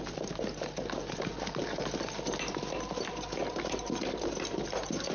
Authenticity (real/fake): real